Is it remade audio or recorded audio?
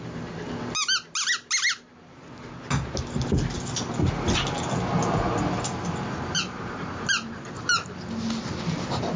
recorded